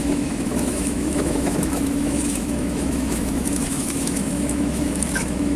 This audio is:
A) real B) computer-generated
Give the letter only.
B